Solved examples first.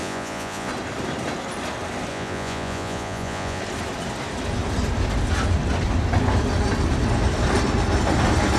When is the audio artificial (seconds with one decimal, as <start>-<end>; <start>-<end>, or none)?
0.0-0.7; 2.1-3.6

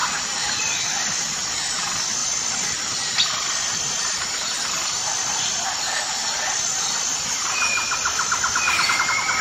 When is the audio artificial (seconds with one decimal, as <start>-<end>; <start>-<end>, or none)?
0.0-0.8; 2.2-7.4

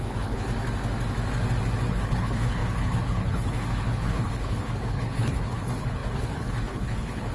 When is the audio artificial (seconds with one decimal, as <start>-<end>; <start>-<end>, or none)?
0.0-0.5; 1.9-7.3

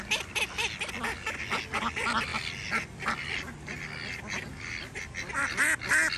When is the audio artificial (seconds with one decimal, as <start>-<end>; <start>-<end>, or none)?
none